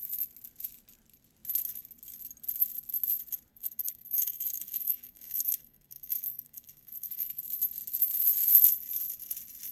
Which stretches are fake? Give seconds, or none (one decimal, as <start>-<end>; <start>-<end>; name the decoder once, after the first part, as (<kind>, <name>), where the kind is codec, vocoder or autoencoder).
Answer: 3.5-7.4 (codec, SNAC)